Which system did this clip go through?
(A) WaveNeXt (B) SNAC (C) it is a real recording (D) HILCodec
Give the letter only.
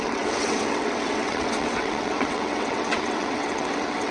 A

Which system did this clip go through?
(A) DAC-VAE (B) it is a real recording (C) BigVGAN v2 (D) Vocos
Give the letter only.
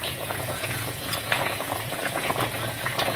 D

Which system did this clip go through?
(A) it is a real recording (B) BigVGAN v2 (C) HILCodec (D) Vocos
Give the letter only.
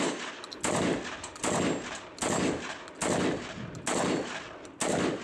A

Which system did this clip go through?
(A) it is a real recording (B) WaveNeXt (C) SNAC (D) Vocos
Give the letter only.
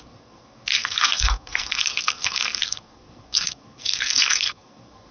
C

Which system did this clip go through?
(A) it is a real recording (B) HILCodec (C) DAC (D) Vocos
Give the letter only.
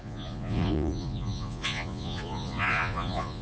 D